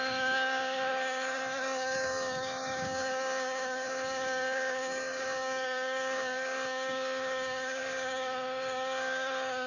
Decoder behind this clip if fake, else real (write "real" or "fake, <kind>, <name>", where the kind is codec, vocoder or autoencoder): fake, codec, DAC